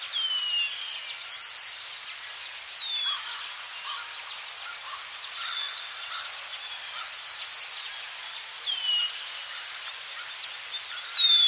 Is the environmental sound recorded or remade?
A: recorded